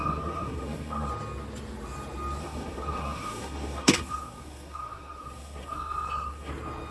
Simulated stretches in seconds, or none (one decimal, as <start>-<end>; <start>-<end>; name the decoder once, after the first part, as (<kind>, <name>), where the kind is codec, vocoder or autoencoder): 0.0-1.1 (codec, SNAC); 2.4-6.5